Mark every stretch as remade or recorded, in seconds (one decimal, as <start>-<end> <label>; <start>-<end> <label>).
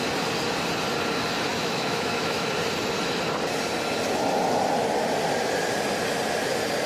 0.0-1.5 recorded; 1.5-2.5 remade; 2.5-6.9 recorded